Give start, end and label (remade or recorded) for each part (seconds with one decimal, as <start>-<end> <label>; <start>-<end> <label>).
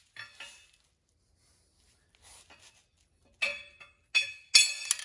0.0-5.0 recorded